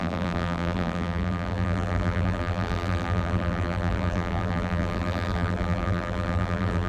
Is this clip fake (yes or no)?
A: yes